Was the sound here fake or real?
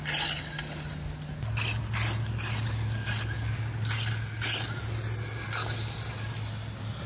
real